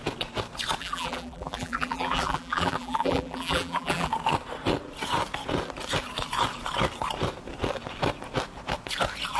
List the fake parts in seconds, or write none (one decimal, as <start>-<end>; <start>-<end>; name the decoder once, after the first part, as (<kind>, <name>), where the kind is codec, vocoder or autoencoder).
0.8-4.1 (vocoder, BigVGAN v2)